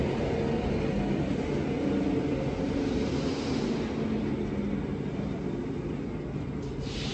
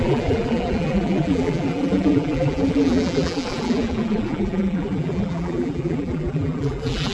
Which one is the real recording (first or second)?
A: first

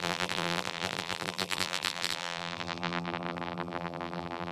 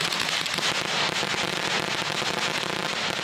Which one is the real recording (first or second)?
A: second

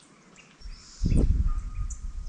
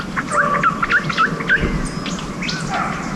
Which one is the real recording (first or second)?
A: second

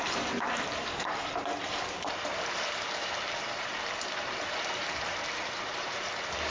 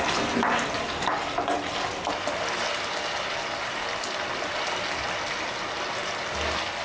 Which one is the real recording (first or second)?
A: second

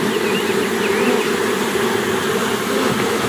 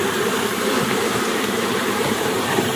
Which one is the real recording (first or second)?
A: first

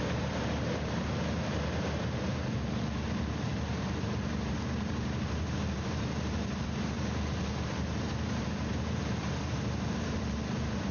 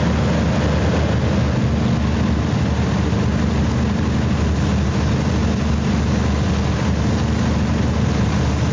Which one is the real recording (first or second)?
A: second